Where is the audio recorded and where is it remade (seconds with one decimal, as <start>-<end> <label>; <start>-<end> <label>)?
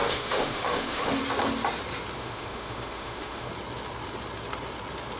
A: 0.0-1.2 remade; 1.2-2.2 recorded; 2.2-3.5 remade; 3.5-5.2 recorded